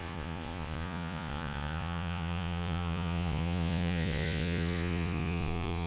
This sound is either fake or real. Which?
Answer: fake